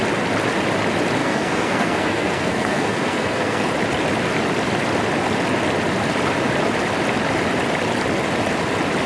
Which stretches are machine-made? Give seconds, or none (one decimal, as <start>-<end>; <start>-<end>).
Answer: 1.2-3.7